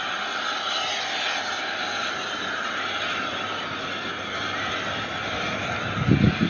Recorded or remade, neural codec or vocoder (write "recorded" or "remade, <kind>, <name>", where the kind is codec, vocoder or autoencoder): recorded